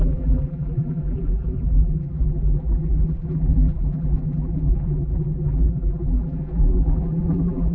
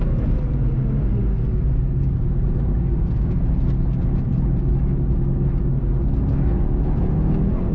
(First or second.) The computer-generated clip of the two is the first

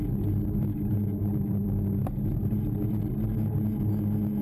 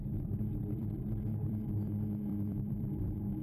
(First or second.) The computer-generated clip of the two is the second